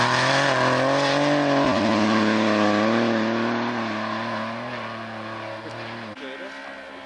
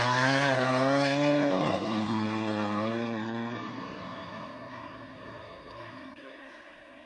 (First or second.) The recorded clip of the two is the first